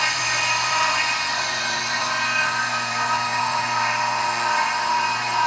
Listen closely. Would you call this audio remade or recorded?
remade